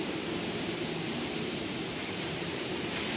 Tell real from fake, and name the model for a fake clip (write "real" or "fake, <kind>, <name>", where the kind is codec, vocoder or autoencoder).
fake, vocoder, BigVGAN v2